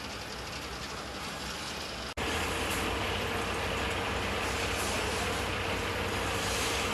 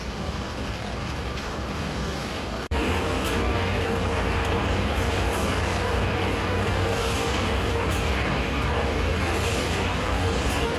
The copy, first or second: second